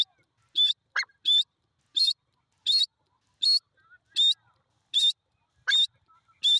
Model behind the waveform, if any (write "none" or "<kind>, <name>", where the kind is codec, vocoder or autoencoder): none